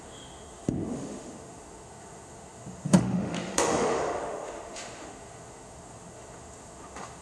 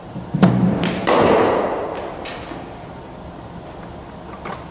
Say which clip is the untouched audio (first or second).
second